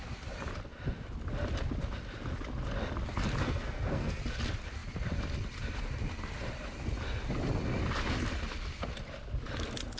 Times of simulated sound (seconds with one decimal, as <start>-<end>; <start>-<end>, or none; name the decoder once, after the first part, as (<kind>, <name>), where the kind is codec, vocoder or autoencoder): 3.4-4.2 (codec, SNAC)